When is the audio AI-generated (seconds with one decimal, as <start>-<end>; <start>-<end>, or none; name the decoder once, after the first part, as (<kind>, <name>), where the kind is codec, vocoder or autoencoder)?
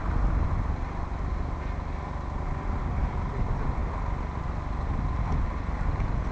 none